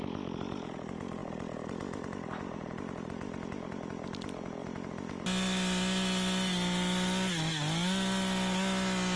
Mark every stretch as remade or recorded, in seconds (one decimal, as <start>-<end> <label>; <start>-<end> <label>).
0.0-9.2 recorded